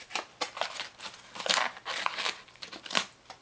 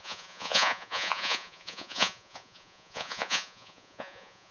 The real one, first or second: first